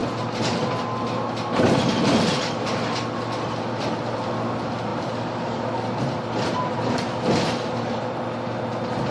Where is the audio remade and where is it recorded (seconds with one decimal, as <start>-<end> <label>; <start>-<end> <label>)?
0.0-9.1 recorded